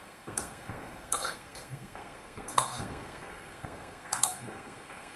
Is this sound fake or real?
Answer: fake